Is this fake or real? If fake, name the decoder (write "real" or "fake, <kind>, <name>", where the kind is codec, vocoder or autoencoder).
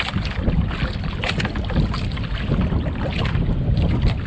real